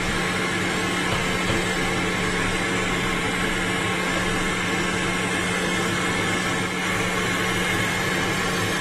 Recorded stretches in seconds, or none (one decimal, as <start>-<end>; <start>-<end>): 0.0-8.8